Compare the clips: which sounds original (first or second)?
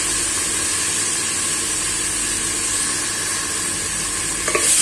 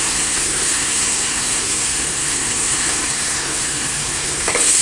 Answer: first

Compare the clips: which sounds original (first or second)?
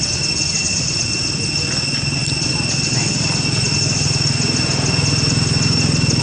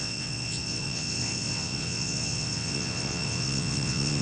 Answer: first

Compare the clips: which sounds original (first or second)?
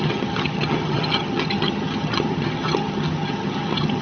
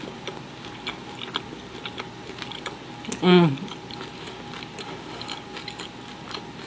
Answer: second